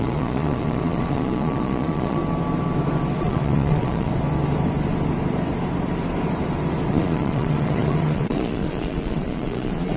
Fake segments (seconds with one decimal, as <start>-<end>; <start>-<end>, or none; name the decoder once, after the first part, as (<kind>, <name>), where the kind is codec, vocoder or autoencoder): 0.0-2.2 (vocoder, Vocos); 3.2-4.1; 6.9-10.0